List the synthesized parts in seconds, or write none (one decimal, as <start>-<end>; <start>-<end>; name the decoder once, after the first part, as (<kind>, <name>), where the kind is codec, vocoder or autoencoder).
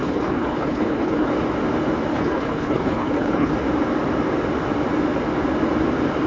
0.0-1.3 (codec, HILCodec); 2.1-3.5